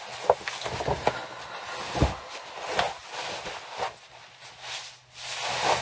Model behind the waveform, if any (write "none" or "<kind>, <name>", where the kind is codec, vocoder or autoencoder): none